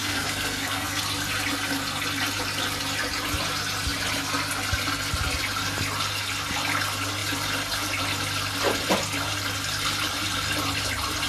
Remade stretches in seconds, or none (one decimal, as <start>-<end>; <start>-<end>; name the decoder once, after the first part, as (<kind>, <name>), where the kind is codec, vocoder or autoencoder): 0.0-1.0 (codec, SNAC)